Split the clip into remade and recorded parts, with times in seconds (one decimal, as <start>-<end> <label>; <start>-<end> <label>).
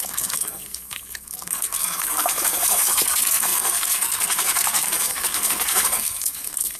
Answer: 0.0-6.8 remade